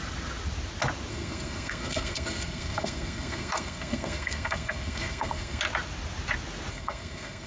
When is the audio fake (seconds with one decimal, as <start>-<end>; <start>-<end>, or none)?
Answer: 1.1-5.6; 6.7-7.5